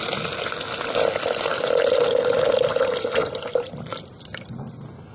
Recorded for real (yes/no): yes